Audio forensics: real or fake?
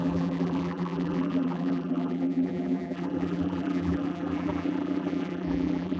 fake